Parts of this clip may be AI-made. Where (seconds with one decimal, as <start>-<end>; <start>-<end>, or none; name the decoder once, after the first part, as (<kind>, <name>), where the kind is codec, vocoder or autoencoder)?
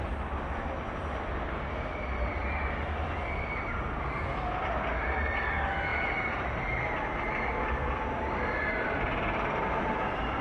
5.9-6.8 (vocoder, BigVGAN v2)